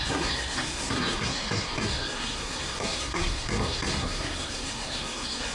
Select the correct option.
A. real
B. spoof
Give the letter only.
B